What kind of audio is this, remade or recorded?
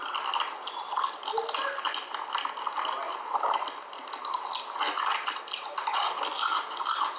recorded